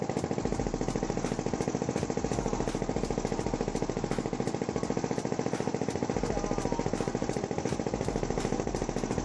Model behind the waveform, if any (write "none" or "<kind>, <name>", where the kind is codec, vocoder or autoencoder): none